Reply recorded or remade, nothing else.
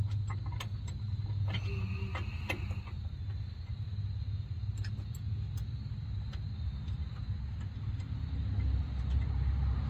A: recorded